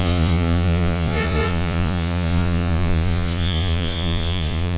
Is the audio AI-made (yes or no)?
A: yes